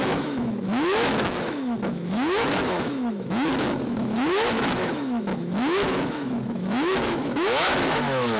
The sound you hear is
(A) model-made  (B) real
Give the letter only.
A